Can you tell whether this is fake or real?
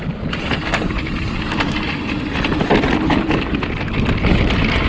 real